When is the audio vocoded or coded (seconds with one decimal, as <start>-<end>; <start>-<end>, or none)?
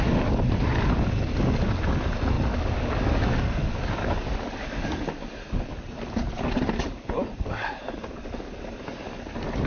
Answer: 2.5-5.0